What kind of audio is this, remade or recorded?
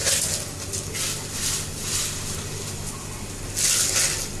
recorded